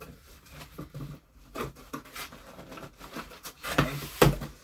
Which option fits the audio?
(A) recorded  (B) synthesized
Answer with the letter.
B